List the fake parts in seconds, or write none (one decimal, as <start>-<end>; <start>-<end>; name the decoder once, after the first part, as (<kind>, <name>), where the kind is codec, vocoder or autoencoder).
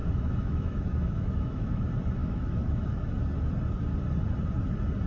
0.0-1.8 (autoencoder, DAC-VAE); 2.2-3.0